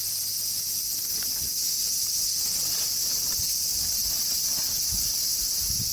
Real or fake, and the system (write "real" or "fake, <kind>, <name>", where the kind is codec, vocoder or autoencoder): real